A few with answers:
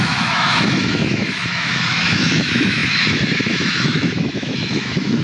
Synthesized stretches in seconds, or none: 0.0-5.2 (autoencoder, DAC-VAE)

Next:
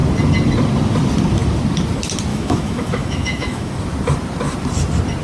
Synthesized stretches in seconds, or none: 2.3-3.7 (autoencoder, DAC-VAE)

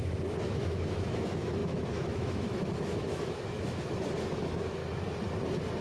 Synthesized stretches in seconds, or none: 0.0-4.8 (autoencoder, DAC-VAE)

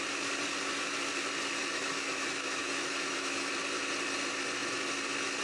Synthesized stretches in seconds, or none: 1.6-3.5 (autoencoder, DAC-VAE)

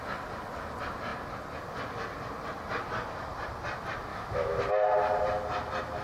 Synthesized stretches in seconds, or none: 4.1-4.6 (autoencoder, DAC-VAE)